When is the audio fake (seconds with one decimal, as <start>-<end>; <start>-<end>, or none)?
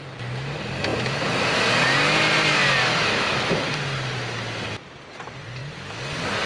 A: none